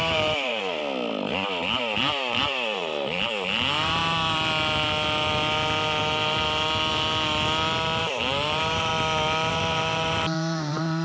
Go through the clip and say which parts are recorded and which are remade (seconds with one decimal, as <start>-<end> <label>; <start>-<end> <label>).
0.0-0.8 remade; 0.8-1.8 recorded; 1.8-4.0 remade; 4.0-8.0 recorded; 8.0-8.9 remade; 8.9-9.5 recorded; 9.5-11.0 remade